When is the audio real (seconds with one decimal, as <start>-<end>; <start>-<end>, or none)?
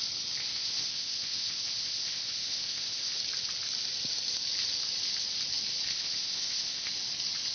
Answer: 0.0-0.4; 3.2-5.9; 6.9-7.5